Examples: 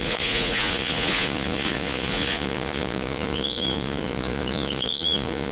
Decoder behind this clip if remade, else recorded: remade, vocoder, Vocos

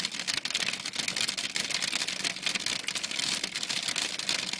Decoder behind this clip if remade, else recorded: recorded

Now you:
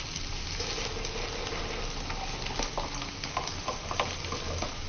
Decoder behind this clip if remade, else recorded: recorded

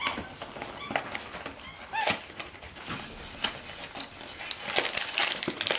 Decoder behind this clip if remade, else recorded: recorded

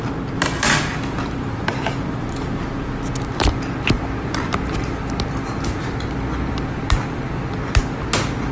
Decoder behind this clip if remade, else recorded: recorded